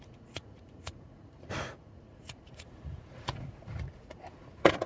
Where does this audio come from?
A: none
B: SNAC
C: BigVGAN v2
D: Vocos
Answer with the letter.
D